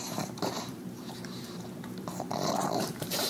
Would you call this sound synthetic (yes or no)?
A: yes